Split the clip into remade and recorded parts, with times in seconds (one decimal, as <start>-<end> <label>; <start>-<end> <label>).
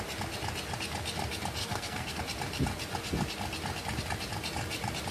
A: 0.0-1.6 recorded; 1.6-2.2 remade; 2.2-5.1 recorded